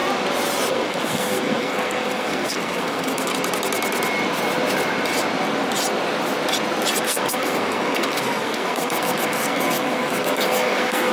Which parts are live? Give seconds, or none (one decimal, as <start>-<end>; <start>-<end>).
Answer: 0.0-0.7; 3.3-7.0